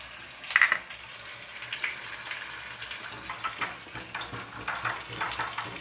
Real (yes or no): yes